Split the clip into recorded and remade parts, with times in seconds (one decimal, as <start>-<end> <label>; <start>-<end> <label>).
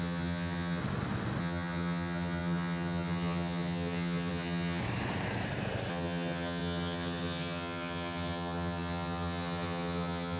0.0-0.8 remade; 0.8-1.4 recorded; 1.4-4.8 remade; 4.8-5.9 recorded; 5.9-10.4 remade